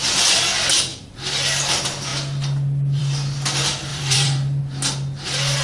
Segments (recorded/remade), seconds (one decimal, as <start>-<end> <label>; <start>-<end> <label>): 0.0-0.9 recorded; 0.9-1.7 remade; 1.7-3.9 recorded; 3.9-4.6 remade; 4.6-5.6 recorded